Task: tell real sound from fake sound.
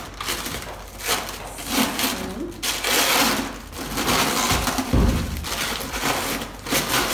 real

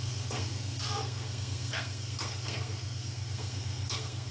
fake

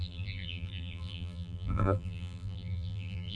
fake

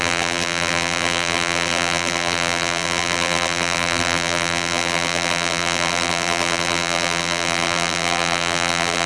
fake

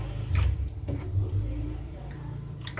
fake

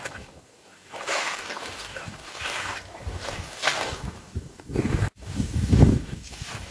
fake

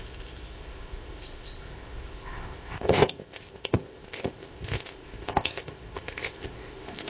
fake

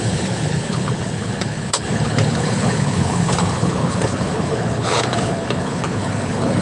fake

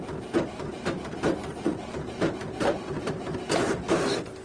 real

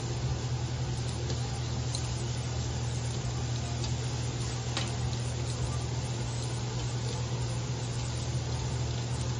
real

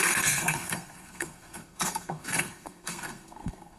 fake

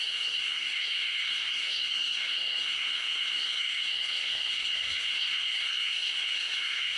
fake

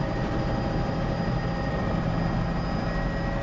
real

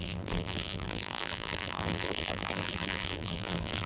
fake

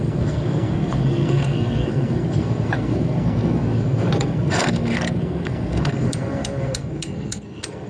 fake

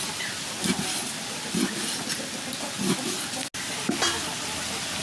real